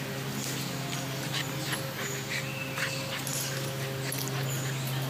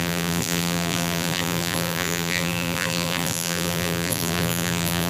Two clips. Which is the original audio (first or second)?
first